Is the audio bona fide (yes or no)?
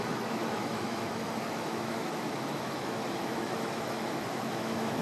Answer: no